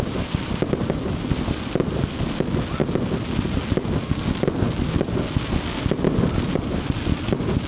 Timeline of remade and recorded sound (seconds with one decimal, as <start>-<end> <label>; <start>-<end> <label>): 0.0-7.7 recorded